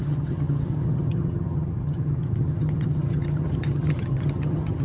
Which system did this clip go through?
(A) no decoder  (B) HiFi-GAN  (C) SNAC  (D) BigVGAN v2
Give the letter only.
B